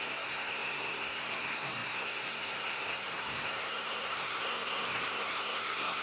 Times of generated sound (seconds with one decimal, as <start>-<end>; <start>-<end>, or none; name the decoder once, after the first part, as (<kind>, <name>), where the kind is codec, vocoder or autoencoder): 0.0-6.0 (codec, SNAC)